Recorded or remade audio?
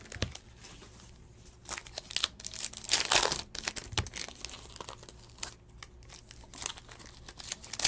recorded